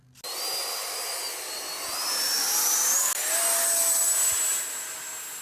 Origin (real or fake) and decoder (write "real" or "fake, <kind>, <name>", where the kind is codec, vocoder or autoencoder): real